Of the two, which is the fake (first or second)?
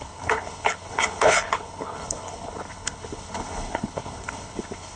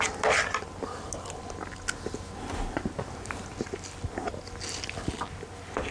first